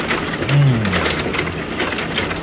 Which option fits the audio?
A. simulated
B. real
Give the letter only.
B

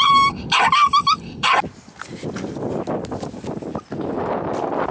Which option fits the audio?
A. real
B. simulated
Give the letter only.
A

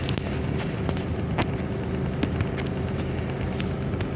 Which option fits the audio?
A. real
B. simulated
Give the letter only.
A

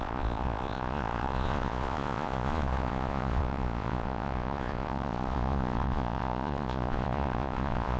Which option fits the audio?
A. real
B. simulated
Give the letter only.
B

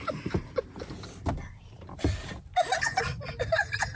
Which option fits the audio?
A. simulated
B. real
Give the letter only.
B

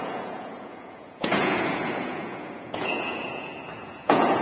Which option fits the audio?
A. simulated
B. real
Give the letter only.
A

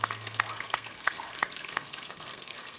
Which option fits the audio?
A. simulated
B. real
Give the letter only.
A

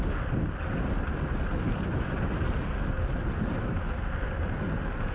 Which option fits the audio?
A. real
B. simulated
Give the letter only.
A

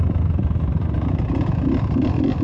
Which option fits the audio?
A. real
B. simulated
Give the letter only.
A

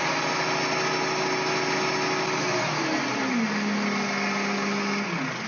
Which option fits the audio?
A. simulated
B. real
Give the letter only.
B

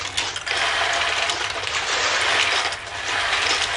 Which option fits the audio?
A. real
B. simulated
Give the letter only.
A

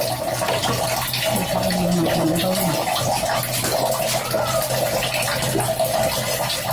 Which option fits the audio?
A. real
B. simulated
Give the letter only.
A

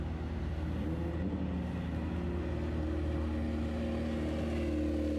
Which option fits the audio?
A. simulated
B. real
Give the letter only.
B